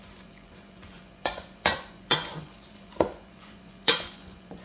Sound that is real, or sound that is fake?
fake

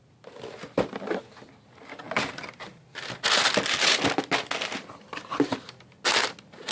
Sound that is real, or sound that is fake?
real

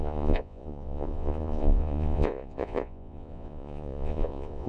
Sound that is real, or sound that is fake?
fake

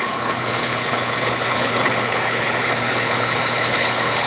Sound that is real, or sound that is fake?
fake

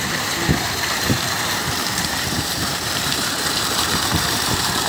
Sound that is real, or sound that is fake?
fake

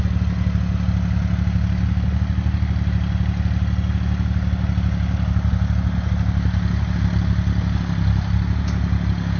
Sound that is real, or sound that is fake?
real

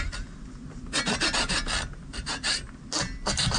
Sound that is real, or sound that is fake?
real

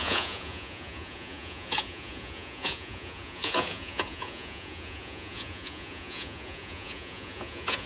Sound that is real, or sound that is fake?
fake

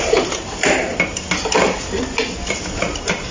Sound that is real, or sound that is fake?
real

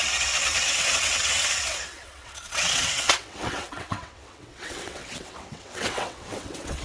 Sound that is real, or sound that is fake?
fake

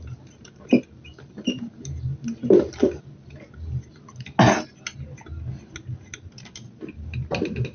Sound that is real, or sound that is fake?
real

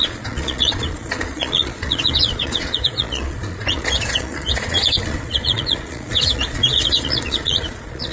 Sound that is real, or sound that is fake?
fake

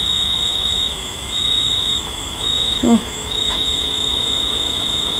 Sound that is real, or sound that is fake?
fake